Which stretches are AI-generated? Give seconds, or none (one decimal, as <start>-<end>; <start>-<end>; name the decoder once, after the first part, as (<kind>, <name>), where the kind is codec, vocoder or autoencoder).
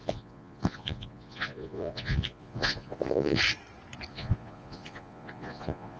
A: 0.0-3.4 (vocoder, Vocos); 4.1-6.0